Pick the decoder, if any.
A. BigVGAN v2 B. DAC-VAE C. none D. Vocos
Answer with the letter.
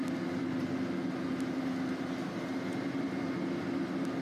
C